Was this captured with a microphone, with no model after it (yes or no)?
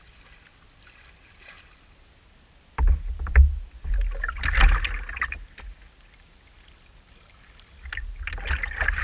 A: yes